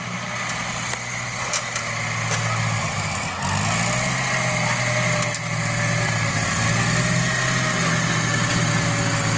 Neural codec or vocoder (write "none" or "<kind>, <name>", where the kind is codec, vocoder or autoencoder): none